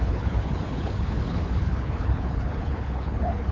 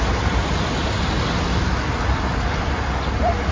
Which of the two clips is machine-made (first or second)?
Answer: first